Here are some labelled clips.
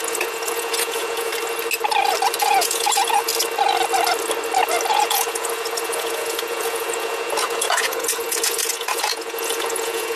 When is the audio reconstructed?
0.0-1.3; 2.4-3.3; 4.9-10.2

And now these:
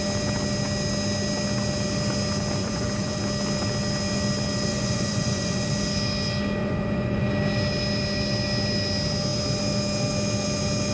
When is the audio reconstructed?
2.6-3.2; 4.7-5.7; 6.6-7.3